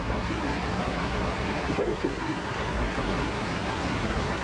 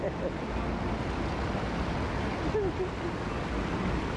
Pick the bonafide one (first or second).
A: second